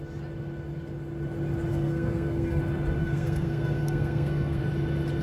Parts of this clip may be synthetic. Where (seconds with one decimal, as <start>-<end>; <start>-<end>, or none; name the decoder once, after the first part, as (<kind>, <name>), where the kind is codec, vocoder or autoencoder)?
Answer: 1.7-2.6 (codec, SNAC); 3.0-4.6